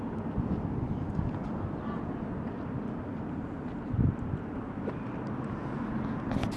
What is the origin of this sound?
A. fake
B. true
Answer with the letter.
B